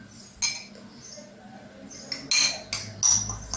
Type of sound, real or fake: real